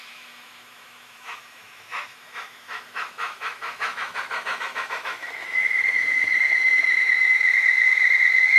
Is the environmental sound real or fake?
fake